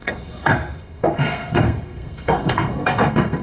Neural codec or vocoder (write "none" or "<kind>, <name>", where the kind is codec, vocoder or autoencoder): codec, SNAC